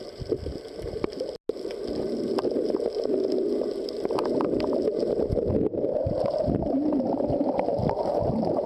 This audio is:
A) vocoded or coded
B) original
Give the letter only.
B